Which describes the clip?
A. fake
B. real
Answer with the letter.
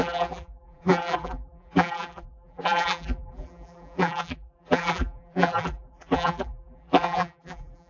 A